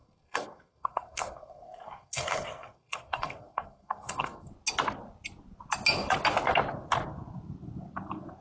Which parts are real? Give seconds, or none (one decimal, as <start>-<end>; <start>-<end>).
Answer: 4.5-8.4